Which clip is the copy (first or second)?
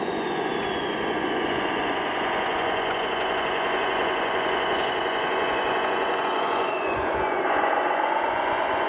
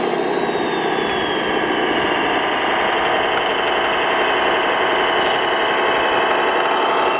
first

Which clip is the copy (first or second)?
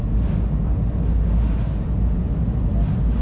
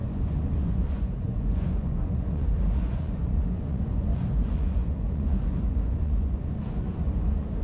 second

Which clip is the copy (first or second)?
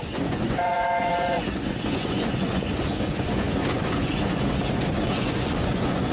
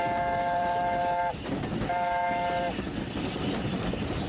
first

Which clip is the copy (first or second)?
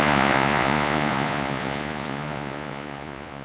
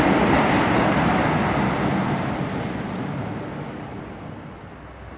first